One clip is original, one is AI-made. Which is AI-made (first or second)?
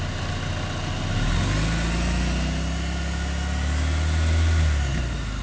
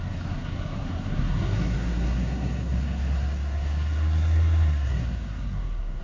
second